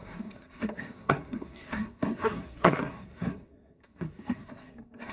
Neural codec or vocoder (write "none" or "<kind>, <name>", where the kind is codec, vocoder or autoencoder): codec, SNAC